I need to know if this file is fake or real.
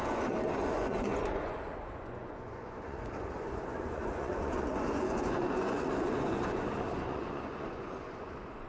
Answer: fake